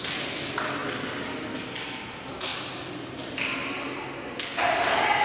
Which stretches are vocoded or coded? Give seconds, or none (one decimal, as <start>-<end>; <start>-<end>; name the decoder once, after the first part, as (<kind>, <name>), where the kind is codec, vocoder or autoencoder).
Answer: none